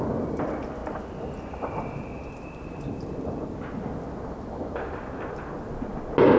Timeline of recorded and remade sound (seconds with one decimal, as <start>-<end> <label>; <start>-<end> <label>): 0.0-6.4 recorded

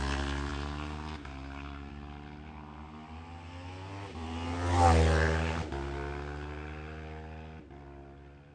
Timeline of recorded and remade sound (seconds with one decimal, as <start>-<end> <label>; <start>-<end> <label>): 0.0-0.5 recorded; 0.5-1.9 remade; 1.9-8.5 recorded

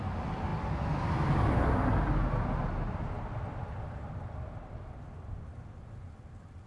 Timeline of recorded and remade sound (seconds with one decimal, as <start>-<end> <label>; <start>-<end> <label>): 0.0-6.7 recorded